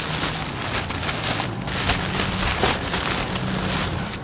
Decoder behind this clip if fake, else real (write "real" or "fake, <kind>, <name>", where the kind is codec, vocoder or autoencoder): real